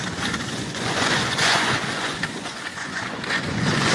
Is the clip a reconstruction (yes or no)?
yes